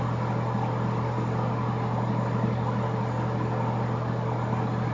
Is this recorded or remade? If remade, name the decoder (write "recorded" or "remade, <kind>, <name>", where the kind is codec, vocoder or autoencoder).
recorded